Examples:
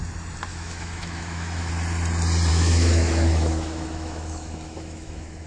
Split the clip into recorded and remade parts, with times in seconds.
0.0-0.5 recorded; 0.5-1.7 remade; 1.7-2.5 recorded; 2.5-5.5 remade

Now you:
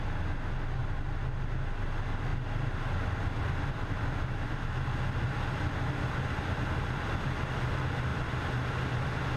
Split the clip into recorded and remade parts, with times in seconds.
0.0-9.4 recorded